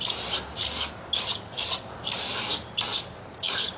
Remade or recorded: recorded